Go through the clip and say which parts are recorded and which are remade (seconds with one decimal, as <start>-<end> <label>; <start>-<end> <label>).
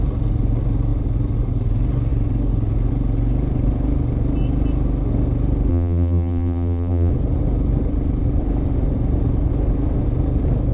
0.0-5.7 recorded; 5.7-7.1 remade; 7.1-10.7 recorded